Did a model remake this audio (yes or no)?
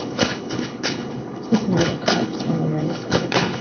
yes